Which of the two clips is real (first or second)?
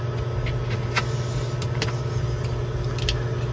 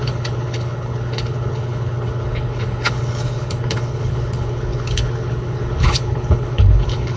first